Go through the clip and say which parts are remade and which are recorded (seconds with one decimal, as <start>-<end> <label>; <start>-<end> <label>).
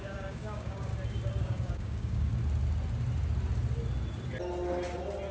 0.0-0.9 remade; 0.9-1.4 recorded; 1.4-2.3 remade; 2.3-5.3 recorded